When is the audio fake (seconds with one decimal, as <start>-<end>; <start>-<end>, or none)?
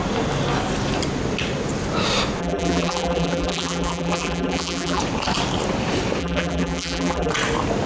2.4-5.0; 6.2-7.3